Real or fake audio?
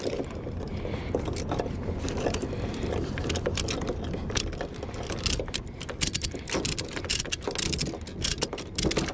real